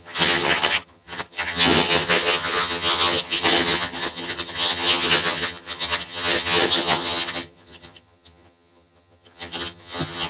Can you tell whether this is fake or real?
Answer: fake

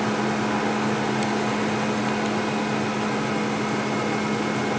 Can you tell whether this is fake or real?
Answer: real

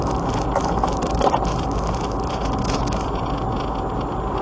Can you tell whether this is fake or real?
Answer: real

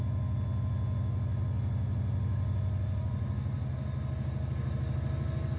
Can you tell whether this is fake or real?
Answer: real